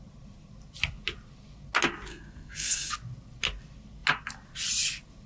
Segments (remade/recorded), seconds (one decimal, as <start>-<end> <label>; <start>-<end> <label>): 0.0-2.1 recorded; 2.1-2.9 remade; 2.9-5.3 recorded